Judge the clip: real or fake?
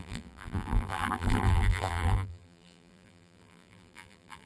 fake